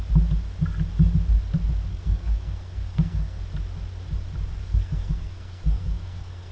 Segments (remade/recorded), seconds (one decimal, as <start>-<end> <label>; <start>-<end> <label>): 0.0-1.9 recorded; 1.9-3.4 remade; 3.4-4.6 recorded; 4.6-6.5 remade